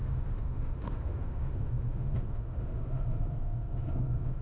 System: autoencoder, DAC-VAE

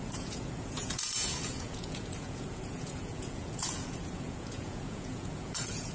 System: vocoder, Vocos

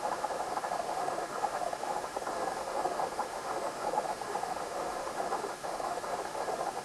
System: autoencoder, DAC-VAE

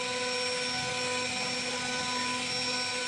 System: none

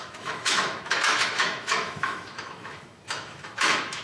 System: autoencoder, DAC-VAE